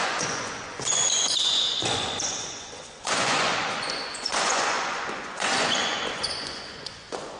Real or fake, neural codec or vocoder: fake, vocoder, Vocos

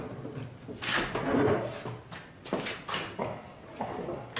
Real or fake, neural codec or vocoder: real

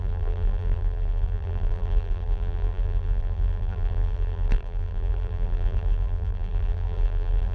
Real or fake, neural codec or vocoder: fake, vocoder, BigVGAN v2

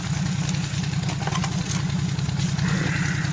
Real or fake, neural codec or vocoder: real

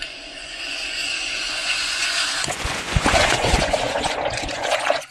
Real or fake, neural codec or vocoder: fake, vocoder, Vocos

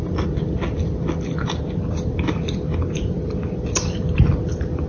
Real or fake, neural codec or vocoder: fake, vocoder, BigVGAN v2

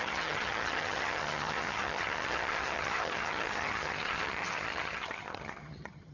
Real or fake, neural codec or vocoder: fake, vocoder, HiFi-GAN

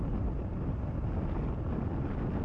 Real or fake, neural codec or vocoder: real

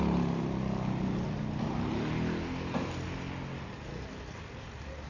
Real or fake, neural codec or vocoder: real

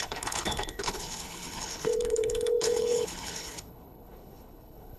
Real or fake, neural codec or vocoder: fake, codec, HILCodec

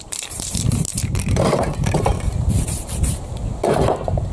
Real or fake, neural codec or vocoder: fake, vocoder, BigVGAN v2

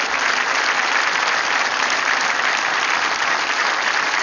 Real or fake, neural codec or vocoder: real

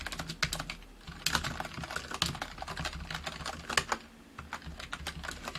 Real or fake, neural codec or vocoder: real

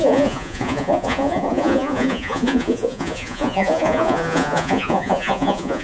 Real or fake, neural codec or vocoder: fake, vocoder, Vocos